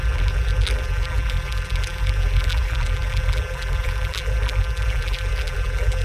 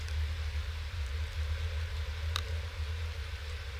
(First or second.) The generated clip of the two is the first